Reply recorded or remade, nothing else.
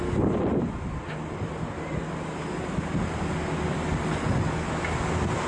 recorded